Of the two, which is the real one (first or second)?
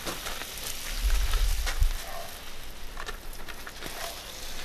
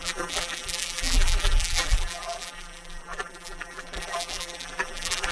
first